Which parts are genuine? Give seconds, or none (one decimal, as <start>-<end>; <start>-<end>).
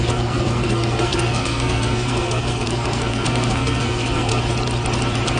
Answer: 4.3-5.4